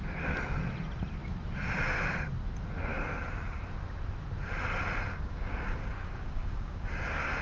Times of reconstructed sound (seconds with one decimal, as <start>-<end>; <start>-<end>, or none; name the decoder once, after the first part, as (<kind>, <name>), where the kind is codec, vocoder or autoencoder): 5.1-7.4 (codec, DAC)